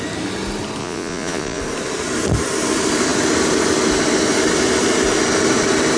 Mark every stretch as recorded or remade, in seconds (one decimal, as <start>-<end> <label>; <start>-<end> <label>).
0.0-0.8 recorded; 0.8-1.6 remade; 1.6-6.0 recorded